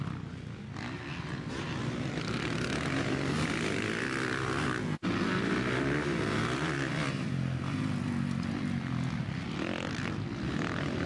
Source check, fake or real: real